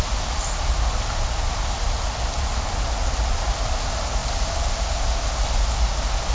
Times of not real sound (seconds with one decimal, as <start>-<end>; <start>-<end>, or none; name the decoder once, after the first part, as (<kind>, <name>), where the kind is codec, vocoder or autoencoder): none